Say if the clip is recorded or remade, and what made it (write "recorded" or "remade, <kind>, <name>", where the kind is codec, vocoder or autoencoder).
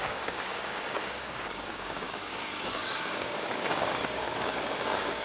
remade, codec, DAC